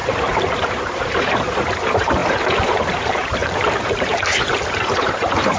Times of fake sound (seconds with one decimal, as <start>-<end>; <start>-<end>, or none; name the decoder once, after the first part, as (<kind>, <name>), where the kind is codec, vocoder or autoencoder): 0.0-5.6 (vocoder, BigVGAN v2)